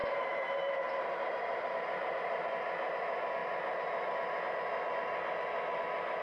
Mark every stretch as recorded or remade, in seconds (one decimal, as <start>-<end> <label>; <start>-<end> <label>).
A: 0.0-2.5 remade; 2.5-6.2 recorded